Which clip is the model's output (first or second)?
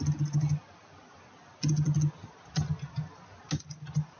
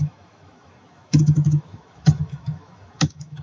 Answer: second